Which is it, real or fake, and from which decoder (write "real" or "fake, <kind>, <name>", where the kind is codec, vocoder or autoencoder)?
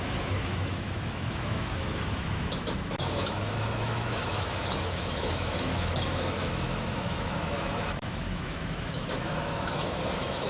fake, autoencoder, DAC-VAE